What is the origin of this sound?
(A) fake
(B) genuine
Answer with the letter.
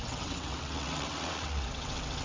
A